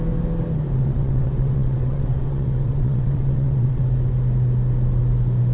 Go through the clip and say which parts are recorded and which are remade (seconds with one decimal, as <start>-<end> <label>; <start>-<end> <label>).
0.0-0.8 recorded; 0.8-3.8 remade; 3.8-5.5 recorded